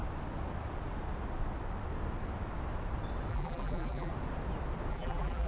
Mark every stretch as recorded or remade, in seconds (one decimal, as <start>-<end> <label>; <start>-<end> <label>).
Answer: 0.0-3.3 recorded; 3.3-4.1 remade; 4.1-4.9 recorded; 4.9-5.5 remade

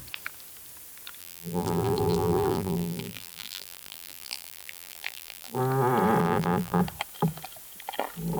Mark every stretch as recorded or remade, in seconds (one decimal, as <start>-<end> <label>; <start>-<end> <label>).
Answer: 0.0-1.2 recorded; 1.2-5.6 remade; 5.6-6.2 recorded; 6.2-6.8 remade; 6.8-8.4 recorded

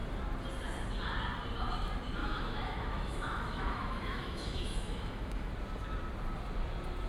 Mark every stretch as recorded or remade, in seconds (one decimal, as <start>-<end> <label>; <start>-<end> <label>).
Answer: 0.0-2.2 recorded; 2.2-5.5 remade; 5.5-7.1 recorded

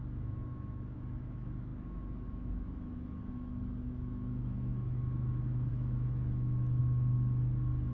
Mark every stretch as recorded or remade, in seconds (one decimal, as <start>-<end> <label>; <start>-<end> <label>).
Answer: 0.0-6.8 remade; 6.8-7.9 recorded

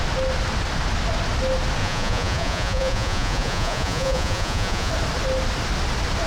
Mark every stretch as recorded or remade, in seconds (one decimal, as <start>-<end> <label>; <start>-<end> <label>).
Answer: 0.0-1.8 recorded; 1.8-4.9 remade; 4.9-6.3 recorded

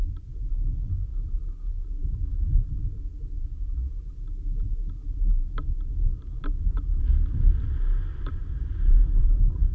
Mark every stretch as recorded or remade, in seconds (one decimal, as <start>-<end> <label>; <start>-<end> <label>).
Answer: 0.0-3.8 remade; 3.8-5.2 recorded; 5.2-7.1 remade; 7.1-8.1 recorded; 8.1-9.7 remade